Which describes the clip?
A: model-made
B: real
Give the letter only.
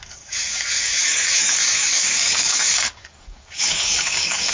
A